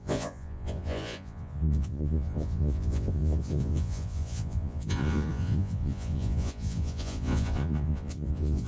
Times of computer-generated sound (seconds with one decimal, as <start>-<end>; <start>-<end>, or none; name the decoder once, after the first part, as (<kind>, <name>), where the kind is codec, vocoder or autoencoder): 0.0-8.7 (vocoder, Vocos)